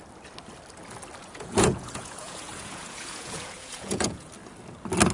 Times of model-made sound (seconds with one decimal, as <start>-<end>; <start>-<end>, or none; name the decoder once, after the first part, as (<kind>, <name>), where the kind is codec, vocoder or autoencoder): 1.2-4.3 (vocoder, Vocos)